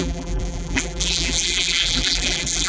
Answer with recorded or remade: remade